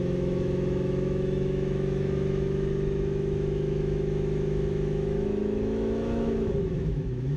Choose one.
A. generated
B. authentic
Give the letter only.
A